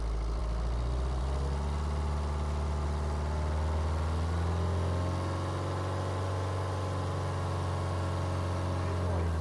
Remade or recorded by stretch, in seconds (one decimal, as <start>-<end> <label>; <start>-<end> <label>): 0.0-9.4 recorded